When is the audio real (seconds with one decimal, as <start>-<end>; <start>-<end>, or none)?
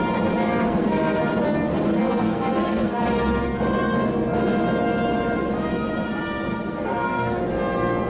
0.0-0.6; 1.2-2.0; 3.0-6.5; 7.4-8.1